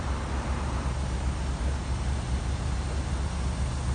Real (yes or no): yes